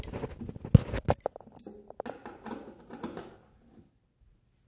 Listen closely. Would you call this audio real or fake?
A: real